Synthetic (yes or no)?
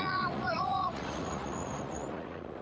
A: yes